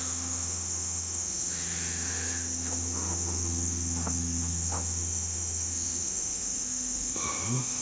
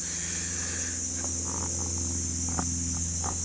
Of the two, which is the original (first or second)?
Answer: second